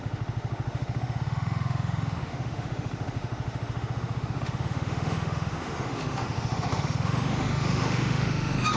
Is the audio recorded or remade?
remade